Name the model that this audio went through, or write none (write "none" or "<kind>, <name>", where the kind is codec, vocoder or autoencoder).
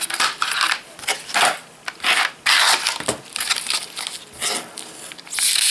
none